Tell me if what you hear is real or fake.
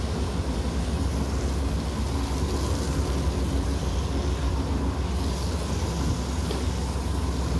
real